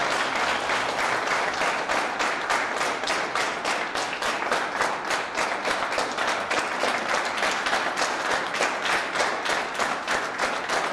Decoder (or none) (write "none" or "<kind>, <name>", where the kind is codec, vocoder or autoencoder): none